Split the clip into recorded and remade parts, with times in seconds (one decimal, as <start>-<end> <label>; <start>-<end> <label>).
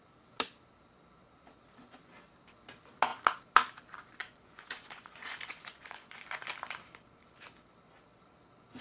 0.0-4.2 recorded; 4.2-6.4 remade; 6.4-8.8 recorded